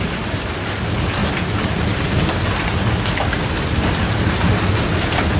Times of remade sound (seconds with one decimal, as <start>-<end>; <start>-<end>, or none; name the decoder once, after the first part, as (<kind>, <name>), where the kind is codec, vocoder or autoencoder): none